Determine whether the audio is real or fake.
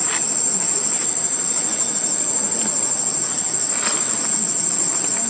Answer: real